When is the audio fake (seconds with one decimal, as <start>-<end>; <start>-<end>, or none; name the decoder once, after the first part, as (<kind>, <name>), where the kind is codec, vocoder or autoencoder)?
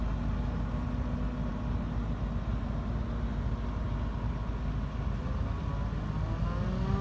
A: none